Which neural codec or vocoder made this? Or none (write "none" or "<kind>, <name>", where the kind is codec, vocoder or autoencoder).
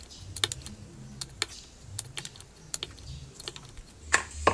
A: none